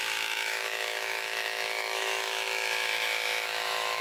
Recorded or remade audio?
remade